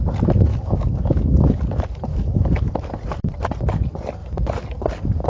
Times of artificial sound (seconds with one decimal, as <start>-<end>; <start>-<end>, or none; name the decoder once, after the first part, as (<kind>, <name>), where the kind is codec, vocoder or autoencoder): 0.5-1.6 (autoencoder, DAC-VAE); 2.1-2.7